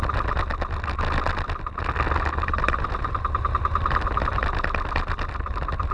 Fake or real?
real